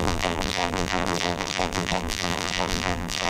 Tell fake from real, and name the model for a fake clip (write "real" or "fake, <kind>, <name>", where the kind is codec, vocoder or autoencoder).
fake, vocoder, BigVGAN v2